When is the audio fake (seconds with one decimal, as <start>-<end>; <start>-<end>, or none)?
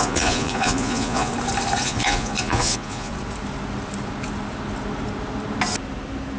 0.0-1.3; 1.8-3.1